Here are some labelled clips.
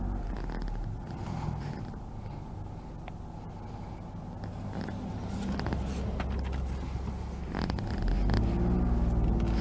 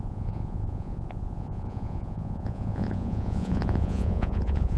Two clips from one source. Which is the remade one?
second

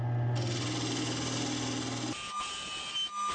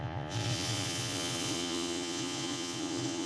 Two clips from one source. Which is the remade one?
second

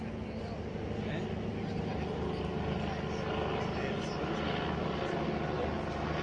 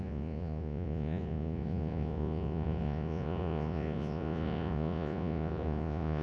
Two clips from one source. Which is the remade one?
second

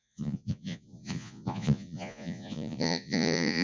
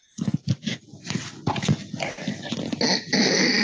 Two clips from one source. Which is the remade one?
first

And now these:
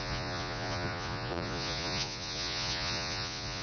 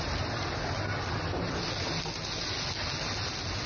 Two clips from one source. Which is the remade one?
first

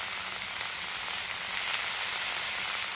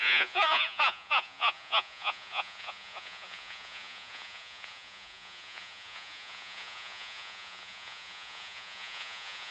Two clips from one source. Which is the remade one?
second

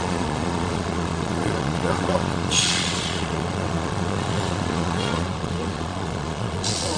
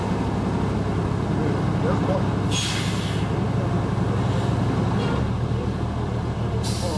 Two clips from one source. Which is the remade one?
first